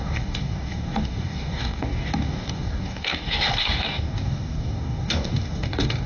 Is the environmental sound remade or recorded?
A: remade